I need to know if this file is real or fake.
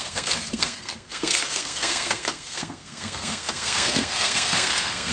fake